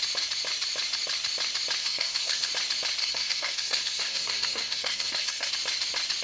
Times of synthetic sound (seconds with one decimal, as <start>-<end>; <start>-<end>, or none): 1.8-2.5; 3.0-5.5